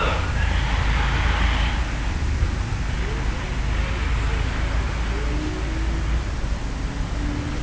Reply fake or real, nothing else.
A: real